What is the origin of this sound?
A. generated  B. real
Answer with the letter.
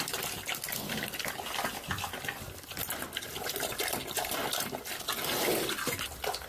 B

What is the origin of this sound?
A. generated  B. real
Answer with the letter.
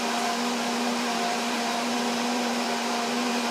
A